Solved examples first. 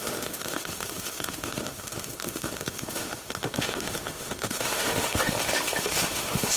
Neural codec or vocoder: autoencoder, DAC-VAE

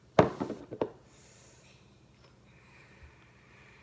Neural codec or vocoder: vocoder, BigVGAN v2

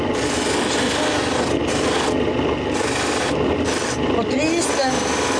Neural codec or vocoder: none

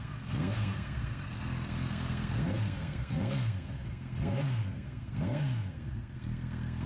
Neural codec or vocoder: codec, SNAC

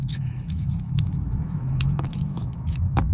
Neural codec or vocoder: autoencoder, DAC-VAE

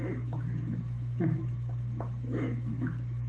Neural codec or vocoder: autoencoder, DAC-VAE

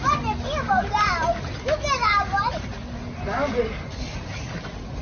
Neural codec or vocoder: none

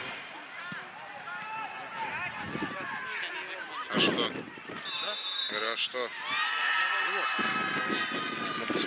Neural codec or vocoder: none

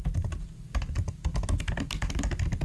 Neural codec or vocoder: none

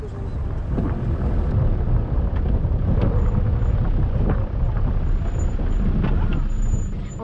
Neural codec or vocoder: none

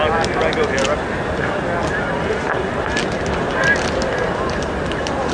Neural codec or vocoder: none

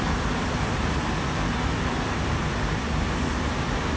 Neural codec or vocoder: none